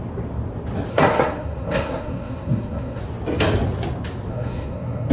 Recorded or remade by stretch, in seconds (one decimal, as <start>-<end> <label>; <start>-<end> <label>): 0.0-0.9 recorded; 0.9-3.0 remade; 3.0-4.3 recorded; 4.3-5.1 remade